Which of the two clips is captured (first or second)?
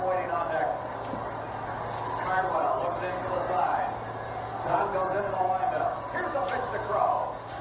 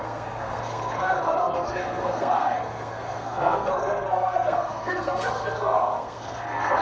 first